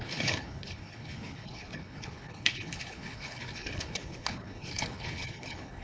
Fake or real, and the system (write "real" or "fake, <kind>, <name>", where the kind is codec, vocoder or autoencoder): fake, codec, HILCodec